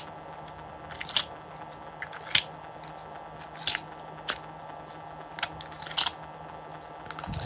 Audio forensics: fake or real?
real